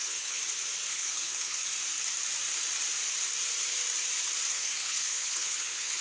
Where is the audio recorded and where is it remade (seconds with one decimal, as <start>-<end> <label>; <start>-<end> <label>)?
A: 0.0-0.4 remade; 0.4-0.9 recorded; 0.9-1.6 remade; 1.6-4.5 recorded; 4.5-6.0 remade